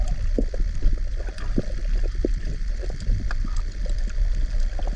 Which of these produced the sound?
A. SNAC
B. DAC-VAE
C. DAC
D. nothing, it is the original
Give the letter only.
D